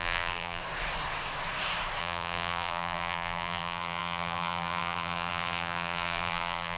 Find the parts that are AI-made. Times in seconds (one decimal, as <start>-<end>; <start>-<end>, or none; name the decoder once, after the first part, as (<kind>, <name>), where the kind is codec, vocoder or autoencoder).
0.0-0.6 (vocoder, BigVGAN v2); 2.0-6.8